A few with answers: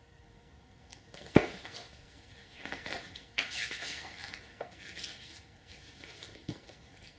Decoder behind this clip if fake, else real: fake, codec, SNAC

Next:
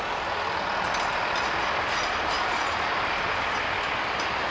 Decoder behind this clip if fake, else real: real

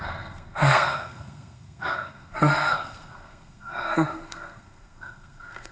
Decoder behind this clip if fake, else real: fake, codec, SNAC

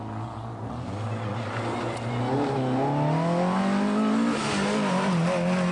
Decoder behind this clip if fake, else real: real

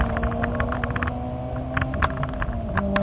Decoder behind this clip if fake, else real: real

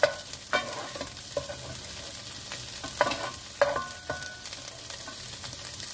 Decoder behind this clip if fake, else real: real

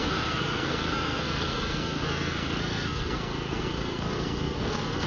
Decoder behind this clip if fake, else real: fake, codec, SNAC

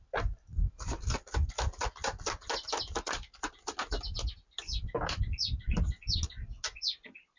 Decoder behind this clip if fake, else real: real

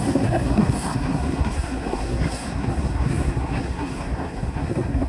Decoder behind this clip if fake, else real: fake, codec, SNAC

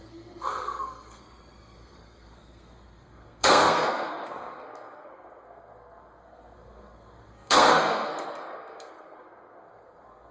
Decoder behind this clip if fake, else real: fake, codec, SNAC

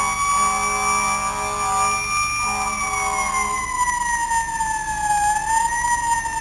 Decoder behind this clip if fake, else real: real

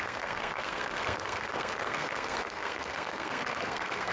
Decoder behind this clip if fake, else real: fake, codec, SNAC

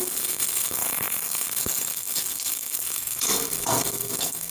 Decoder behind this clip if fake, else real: fake, codec, SNAC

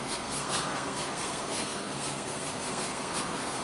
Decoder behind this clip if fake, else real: fake, codec, SNAC